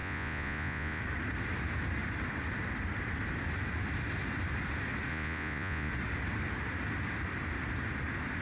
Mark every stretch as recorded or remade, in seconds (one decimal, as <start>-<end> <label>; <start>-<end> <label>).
0.0-1.0 remade; 1.0-5.1 recorded; 5.1-5.9 remade; 5.9-8.4 recorded